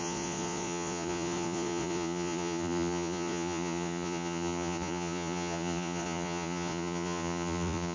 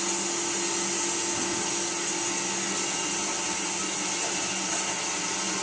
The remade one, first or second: first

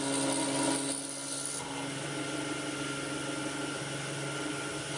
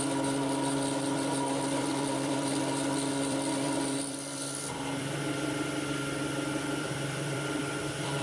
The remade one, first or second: second